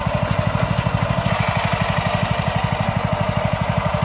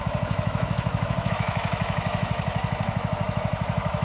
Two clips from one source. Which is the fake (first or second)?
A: second